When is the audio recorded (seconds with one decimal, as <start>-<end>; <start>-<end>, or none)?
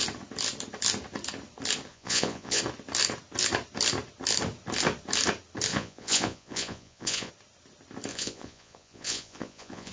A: 0.0-1.9; 2.6-5.7; 7.3-8.1